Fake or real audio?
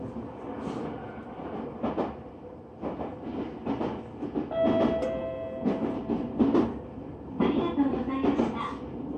real